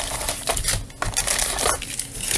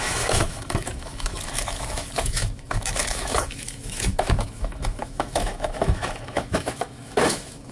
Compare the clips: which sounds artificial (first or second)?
second